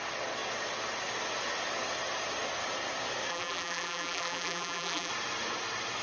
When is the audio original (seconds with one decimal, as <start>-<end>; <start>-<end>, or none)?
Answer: 0.0-3.3; 5.1-6.0